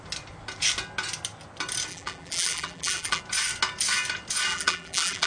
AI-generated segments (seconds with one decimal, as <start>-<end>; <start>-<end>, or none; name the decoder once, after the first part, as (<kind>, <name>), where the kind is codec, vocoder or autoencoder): 1.9-3.2 (vocoder, BigVGAN v2); 4.5-5.3